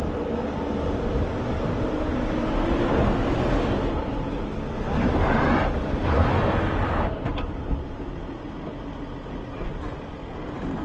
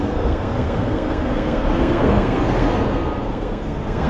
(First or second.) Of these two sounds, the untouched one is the first